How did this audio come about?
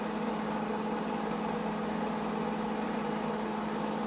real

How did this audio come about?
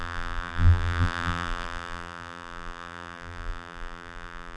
fake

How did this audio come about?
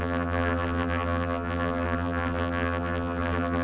fake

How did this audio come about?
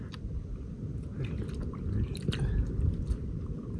real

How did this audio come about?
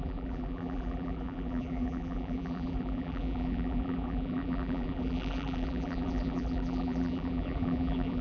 fake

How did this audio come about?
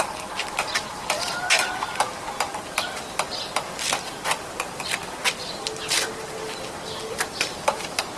real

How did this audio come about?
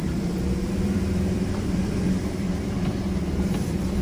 fake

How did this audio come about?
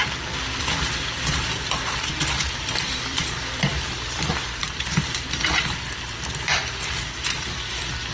fake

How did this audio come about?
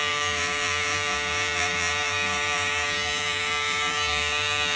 fake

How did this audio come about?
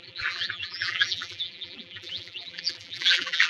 fake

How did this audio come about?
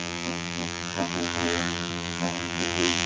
fake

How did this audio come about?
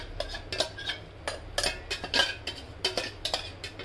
real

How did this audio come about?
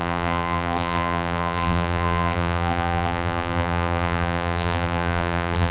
fake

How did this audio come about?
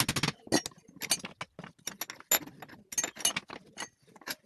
real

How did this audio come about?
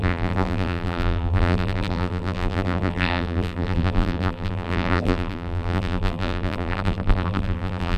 fake